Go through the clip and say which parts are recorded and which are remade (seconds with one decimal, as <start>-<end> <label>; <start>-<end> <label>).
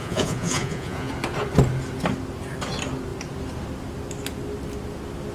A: 0.0-1.1 remade; 1.1-5.3 recorded